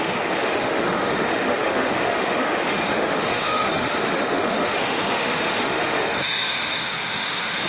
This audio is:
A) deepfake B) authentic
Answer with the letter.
A